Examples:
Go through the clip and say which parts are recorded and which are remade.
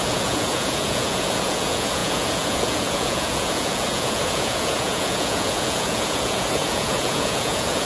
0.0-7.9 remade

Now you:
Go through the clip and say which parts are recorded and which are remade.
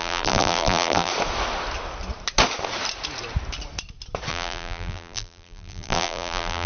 0.0-1.1 remade; 1.1-4.3 recorded; 4.3-6.7 remade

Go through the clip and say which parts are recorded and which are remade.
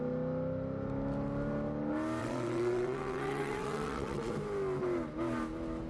0.0-2.2 recorded; 2.2-4.3 remade; 4.3-5.9 recorded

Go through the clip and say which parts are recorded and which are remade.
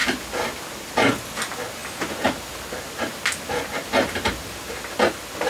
0.0-5.5 recorded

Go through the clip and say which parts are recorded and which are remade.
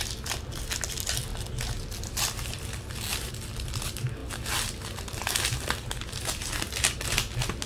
0.0-7.7 recorded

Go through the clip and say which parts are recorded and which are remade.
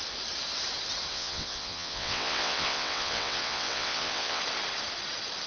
0.0-1.1 recorded; 1.1-4.4 remade; 4.4-5.5 recorded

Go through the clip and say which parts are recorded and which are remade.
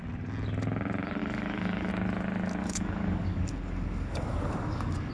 0.0-1.2 recorded; 1.2-1.9 remade; 1.9-2.6 recorded; 2.6-5.1 remade